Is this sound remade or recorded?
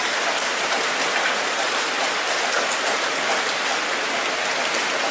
recorded